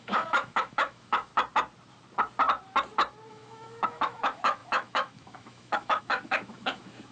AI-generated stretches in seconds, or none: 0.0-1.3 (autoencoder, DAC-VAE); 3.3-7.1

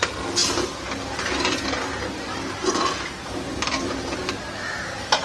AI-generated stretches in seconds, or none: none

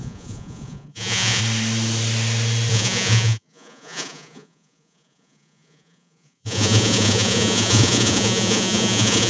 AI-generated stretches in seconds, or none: 0.0-1.4 (vocoder, Vocos); 2.7-9.3